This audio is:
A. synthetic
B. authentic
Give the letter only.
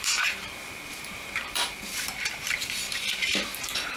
A